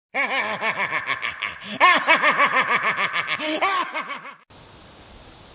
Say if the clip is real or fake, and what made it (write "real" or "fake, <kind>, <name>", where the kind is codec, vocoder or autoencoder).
real